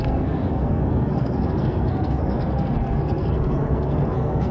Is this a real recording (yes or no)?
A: no